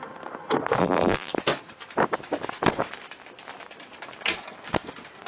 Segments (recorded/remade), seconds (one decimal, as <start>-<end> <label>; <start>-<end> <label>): 0.0-0.8 recorded; 0.8-1.3 remade; 1.3-5.3 recorded